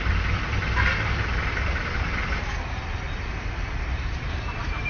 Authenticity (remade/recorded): remade